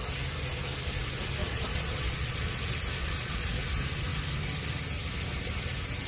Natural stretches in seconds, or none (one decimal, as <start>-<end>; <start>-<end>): 0.0-1.4; 2.5-3.0; 3.6-6.1